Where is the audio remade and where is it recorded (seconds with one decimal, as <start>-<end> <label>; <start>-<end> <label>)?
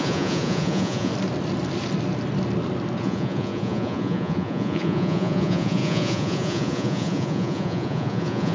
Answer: 0.0-1.1 remade; 1.1-3.0 recorded; 3.0-8.5 remade